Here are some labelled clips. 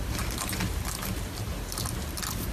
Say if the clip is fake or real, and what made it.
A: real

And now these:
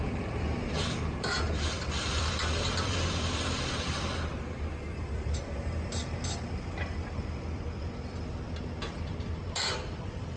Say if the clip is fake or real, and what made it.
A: fake, vocoder, BigVGAN v2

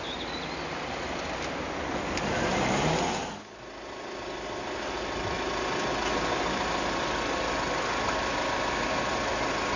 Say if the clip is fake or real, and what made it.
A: real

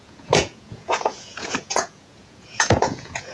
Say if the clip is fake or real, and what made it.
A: fake, vocoder, Vocos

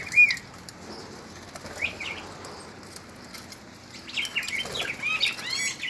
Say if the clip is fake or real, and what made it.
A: real